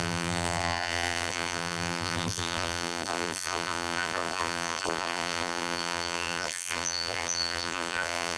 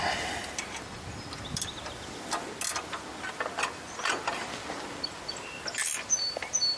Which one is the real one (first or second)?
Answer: second